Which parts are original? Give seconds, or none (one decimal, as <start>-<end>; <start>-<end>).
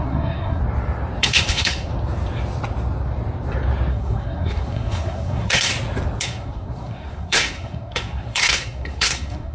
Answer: 0.6-1.2; 1.9-3.9; 5.7-6.2